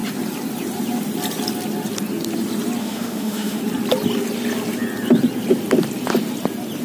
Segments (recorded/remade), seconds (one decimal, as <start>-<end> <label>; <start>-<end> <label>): 0.0-2.8 recorded; 2.8-3.6 remade; 3.6-6.8 recorded